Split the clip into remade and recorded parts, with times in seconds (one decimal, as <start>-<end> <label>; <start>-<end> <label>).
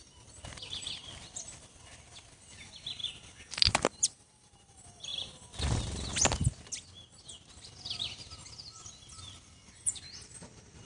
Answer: 0.0-3.0 remade; 3.0-3.7 recorded; 3.7-5.1 remade; 5.1-8.9 recorded; 8.9-10.8 remade